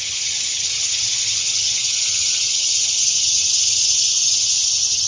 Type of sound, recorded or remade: remade